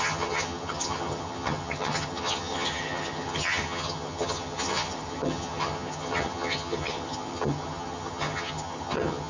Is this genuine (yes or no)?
no